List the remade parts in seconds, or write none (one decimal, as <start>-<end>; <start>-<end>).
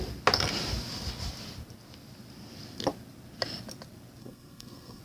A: 4.2-5.0